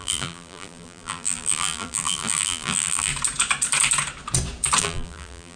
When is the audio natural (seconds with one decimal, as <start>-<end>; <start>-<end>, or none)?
3.1-4.8